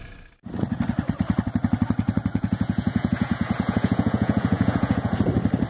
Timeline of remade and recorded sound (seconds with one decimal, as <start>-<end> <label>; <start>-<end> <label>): 0.0-2.3 recorded; 2.3-5.2 remade; 5.2-5.7 recorded